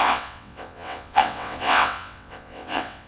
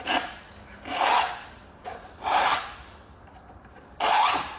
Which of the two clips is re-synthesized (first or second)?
first